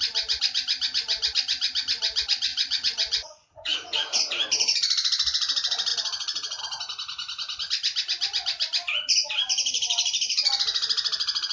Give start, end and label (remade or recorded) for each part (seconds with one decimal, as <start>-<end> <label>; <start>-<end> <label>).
0.0-2.5 recorded; 2.5-4.2 remade; 4.2-5.9 recorded; 5.9-6.6 remade; 6.6-11.5 recorded